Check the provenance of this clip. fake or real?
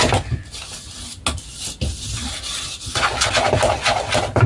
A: real